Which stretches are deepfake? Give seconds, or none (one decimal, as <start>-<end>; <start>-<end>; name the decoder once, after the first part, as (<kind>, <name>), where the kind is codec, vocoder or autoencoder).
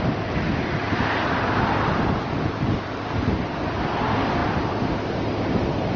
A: 0.0-6.0 (vocoder, BigVGAN v2)